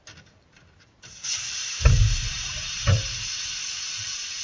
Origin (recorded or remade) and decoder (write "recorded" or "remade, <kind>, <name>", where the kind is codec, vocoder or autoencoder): remade, vocoder, BigVGAN v2